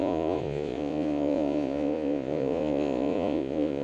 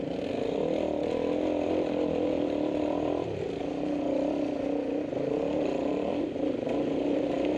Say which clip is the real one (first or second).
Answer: second